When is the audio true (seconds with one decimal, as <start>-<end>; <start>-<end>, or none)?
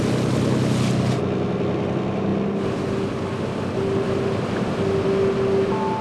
0.0-6.0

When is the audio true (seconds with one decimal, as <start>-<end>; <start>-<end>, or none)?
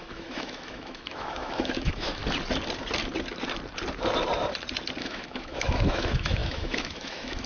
2.2-5.0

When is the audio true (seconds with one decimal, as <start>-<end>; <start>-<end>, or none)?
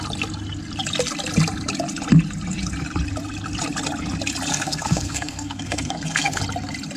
0.0-4.5; 6.4-7.0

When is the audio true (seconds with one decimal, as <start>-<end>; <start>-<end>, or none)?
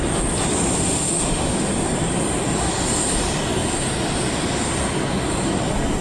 0.0-0.8; 1.7-6.0